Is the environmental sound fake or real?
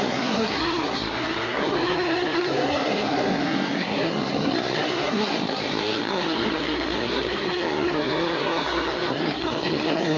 fake